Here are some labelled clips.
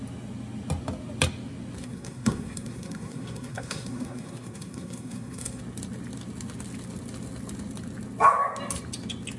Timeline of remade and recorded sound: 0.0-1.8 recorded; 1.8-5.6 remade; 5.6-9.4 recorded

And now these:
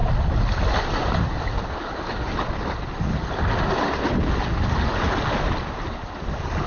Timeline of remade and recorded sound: 0.0-6.7 recorded

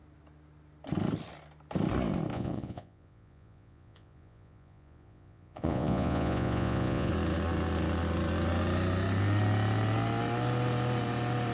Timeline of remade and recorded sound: 0.0-2.3 recorded; 2.3-7.1 remade; 7.1-11.5 recorded

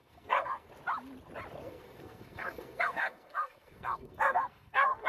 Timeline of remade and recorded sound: 0.0-0.7 remade; 0.7-1.6 recorded; 1.6-5.1 remade

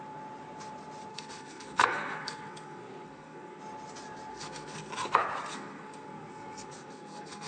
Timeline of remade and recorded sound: 0.0-1.1 recorded; 1.1-3.6 remade; 3.6-4.3 recorded; 4.3-4.9 remade; 4.9-5.5 recorded; 5.5-7.5 remade

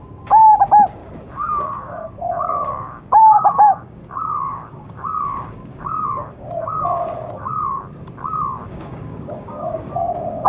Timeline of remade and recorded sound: 0.0-1.0 recorded; 1.0-2.1 remade; 2.1-2.5 recorded; 2.5-7.8 remade; 7.8-8.6 recorded; 8.6-10.5 remade

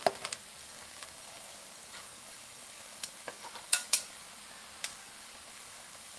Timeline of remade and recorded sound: 0.0-0.6 recorded; 0.6-4.3 remade; 4.3-4.9 recorded; 4.9-6.2 remade